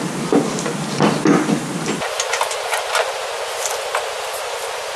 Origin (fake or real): real